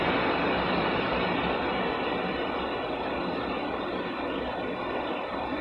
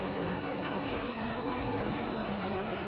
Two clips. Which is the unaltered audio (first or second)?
first